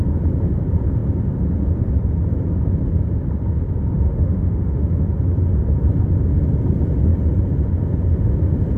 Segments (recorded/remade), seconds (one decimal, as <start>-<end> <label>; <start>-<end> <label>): 0.0-4.1 recorded; 4.1-4.9 remade; 4.9-8.8 recorded